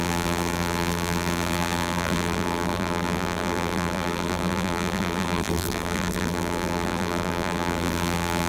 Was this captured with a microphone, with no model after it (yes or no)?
no